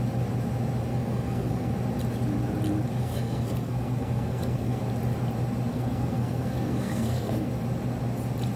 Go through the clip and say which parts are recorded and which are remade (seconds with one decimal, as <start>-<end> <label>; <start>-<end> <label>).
0.0-0.9 recorded; 0.9-1.7 remade; 1.7-3.0 recorded; 3.0-4.8 remade; 4.8-5.7 recorded; 5.7-7.5 remade; 7.5-8.6 recorded

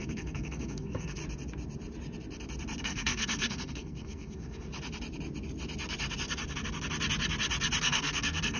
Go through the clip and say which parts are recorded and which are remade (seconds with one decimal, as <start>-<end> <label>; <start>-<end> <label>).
0.0-1.2 remade; 1.2-2.8 recorded; 2.8-4.7 remade; 4.7-7.8 recorded; 7.8-8.6 remade

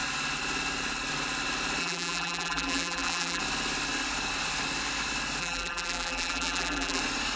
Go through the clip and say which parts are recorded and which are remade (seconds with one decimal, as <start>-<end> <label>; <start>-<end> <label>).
0.0-1.8 recorded; 1.8-3.4 remade; 3.4-5.4 recorded; 5.4-7.0 remade; 7.0-7.4 recorded

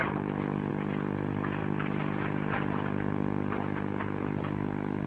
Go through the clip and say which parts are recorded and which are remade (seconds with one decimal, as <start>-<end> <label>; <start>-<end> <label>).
0.0-5.1 recorded

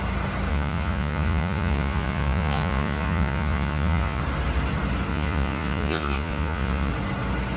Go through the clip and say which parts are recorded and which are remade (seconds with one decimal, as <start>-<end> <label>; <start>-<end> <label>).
0.0-0.5 recorded; 0.5-4.2 remade; 4.2-5.1 recorded; 5.1-6.9 remade; 6.9-7.6 recorded

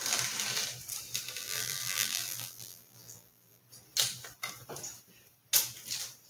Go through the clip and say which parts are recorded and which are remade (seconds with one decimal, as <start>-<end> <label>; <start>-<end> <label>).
0.0-1.4 recorded; 1.4-3.6 remade; 3.6-6.3 recorded

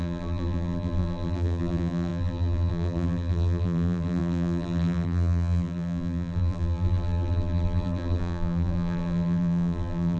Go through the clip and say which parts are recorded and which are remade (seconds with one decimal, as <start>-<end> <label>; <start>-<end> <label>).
0.0-10.2 remade